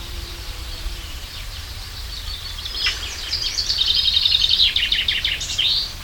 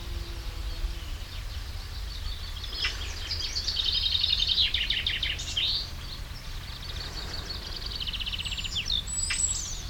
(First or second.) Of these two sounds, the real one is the second